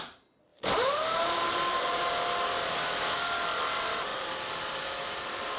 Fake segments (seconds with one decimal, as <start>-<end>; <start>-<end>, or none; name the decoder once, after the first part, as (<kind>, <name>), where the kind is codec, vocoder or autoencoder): 0.5-1.8 (vocoder, BigVGAN v2); 4.1-5.6